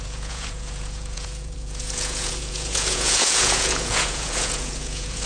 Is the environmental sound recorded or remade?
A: remade